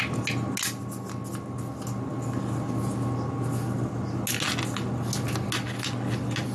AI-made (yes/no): no